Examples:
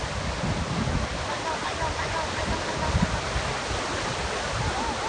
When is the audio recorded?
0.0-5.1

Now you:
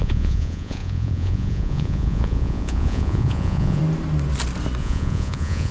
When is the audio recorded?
3.8-4.8